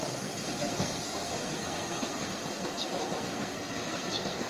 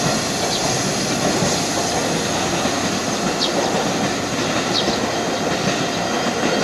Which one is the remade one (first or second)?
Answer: first